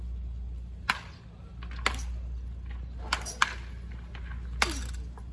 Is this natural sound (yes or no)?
yes